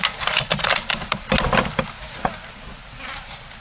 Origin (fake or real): real